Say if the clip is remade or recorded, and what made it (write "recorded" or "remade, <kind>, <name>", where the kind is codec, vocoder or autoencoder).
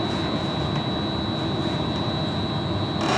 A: recorded